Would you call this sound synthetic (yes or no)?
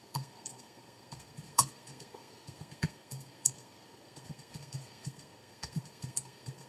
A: yes